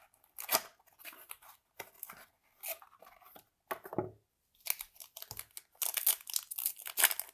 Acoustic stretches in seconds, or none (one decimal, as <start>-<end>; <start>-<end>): 0.0-7.3